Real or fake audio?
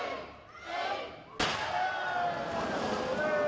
real